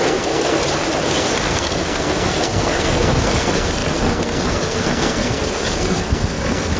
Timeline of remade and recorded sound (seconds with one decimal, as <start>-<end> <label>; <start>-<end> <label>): 0.0-0.6 remade; 0.6-1.1 recorded; 1.1-6.8 remade